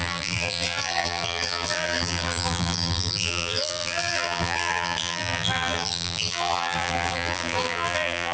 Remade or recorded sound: remade